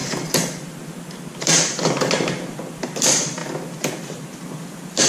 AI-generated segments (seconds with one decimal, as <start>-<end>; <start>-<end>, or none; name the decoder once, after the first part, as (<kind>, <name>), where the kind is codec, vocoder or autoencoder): 1.1-3.4 (vocoder, BigVGAN v2); 3.9-5.1